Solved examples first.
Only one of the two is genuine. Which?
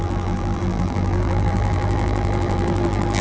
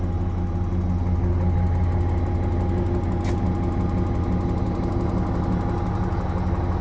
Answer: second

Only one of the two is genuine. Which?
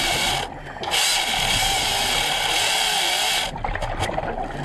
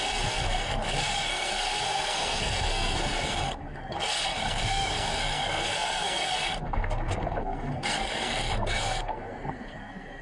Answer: first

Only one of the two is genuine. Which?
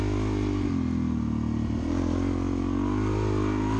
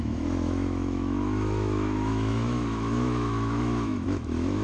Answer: first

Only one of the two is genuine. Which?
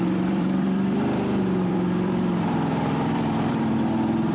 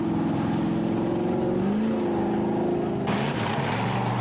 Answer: second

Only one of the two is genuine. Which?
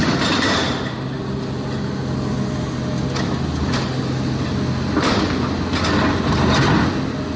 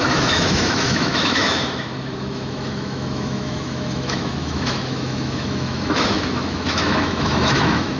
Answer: first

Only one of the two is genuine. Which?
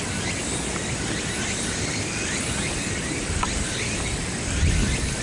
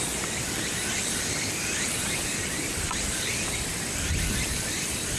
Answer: first